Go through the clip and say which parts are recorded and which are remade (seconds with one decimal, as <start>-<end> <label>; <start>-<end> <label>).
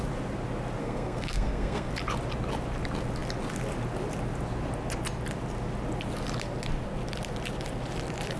0.0-0.8 recorded; 0.8-1.9 remade; 1.9-8.4 recorded